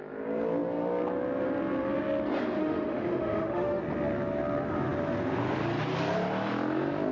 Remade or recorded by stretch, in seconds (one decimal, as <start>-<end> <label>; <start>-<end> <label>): 0.0-2.6 recorded; 2.6-3.8 remade; 3.8-7.1 recorded